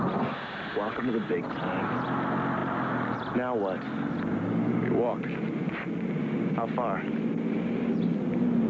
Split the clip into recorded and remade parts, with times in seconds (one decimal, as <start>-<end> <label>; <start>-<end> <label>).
0.0-8.7 recorded